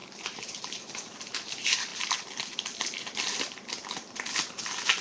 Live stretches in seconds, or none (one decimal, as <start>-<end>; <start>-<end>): 1.2-5.0